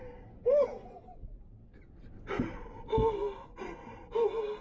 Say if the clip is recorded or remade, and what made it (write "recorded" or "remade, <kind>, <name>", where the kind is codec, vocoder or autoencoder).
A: recorded